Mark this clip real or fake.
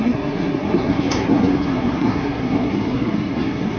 fake